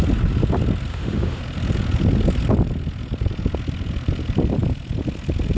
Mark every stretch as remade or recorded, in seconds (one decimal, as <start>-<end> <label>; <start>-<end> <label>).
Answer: 0.0-0.9 recorded; 0.9-1.4 remade; 1.4-5.6 recorded